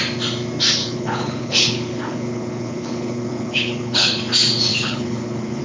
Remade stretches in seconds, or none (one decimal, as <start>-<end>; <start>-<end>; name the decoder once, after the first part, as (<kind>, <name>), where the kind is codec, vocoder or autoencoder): 0.8-4.2 (codec, HILCodec); 4.7-5.6